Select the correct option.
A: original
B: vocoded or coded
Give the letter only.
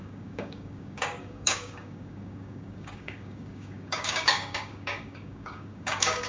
B